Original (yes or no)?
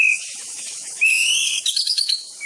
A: no